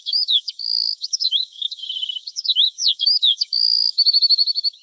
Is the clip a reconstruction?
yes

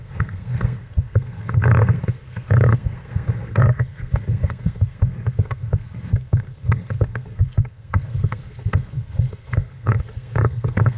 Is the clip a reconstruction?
yes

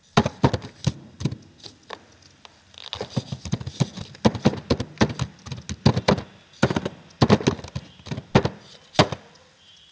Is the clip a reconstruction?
no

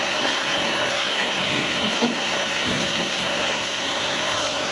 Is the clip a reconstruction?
yes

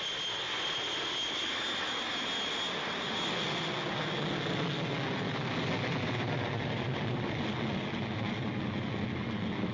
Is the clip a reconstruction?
no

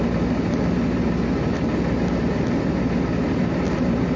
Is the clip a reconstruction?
no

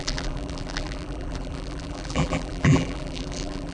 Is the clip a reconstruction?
yes